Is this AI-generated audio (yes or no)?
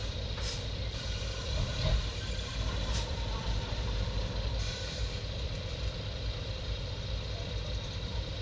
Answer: yes